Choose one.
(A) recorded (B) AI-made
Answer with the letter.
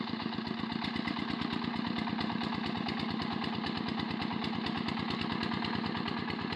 A